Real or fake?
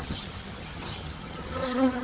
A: fake